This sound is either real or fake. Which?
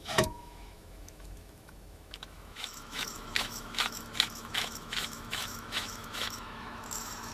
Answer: fake